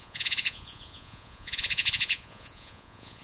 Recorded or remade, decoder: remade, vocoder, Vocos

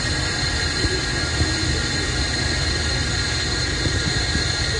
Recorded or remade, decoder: recorded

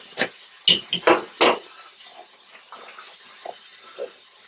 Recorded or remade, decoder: recorded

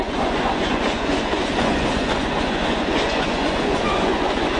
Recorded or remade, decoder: remade, vocoder, Vocos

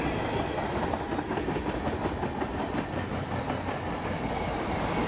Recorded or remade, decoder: recorded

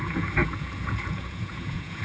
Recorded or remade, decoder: remade, vocoder, Vocos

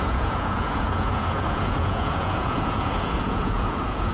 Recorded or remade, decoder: remade, vocoder, Vocos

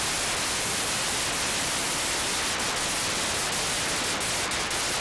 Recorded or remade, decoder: recorded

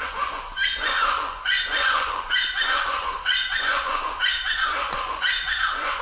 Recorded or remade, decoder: remade, vocoder, Vocos